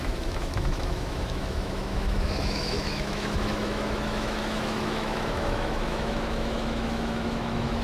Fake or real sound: fake